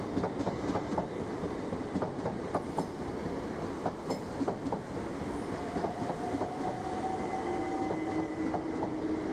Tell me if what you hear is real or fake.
real